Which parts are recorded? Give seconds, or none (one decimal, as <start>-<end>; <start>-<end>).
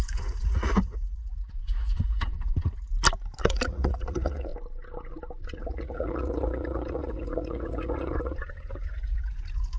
2.9-3.4; 4.5-5.4